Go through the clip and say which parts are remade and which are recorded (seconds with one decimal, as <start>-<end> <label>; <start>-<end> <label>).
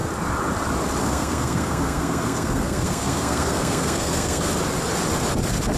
0.0-1.0 recorded; 1.0-4.5 remade; 4.5-5.8 recorded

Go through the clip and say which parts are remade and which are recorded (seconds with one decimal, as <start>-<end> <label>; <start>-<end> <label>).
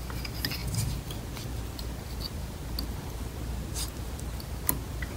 0.0-5.2 recorded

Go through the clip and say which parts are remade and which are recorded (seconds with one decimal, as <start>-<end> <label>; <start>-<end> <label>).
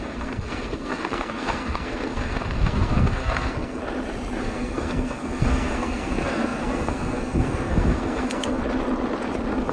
0.0-3.8 remade; 3.8-4.4 recorded; 4.4-8.6 remade; 8.6-9.7 recorded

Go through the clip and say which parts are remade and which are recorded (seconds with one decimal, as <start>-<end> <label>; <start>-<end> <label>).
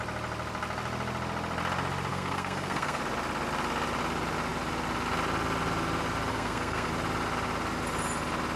0.0-2.1 recorded; 2.1-3.0 remade; 3.0-6.3 recorded; 6.3-6.9 remade; 6.9-8.6 recorded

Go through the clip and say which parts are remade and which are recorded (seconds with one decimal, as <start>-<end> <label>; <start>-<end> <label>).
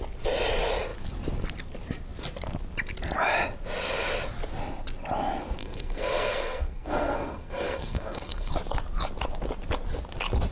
0.0-5.6 recorded; 5.6-8.5 remade; 8.5-10.5 recorded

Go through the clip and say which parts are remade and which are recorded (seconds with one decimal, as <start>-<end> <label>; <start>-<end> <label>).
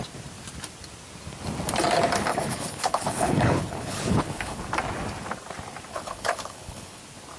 0.0-2.3 recorded; 2.3-4.6 remade; 4.6-5.9 recorded; 5.9-7.0 remade; 7.0-7.4 recorded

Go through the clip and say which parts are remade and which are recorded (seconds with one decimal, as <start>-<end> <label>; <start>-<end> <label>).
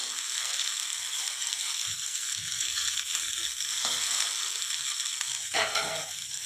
0.0-6.5 remade